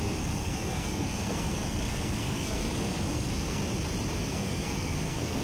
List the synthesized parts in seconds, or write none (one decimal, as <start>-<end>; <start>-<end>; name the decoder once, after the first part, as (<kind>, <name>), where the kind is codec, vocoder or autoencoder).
0.0-3.6 (codec, SNAC); 4.2-5.4